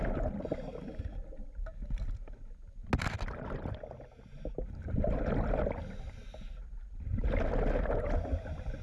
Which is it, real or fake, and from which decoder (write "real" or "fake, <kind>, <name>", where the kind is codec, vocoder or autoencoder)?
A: real